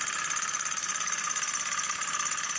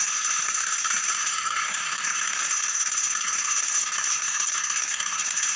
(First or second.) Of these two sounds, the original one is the first